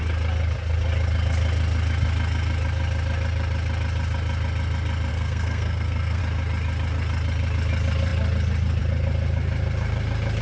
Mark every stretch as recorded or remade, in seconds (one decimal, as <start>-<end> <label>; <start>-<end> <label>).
0.0-5.1 recorded; 5.1-6.2 remade; 6.2-10.4 recorded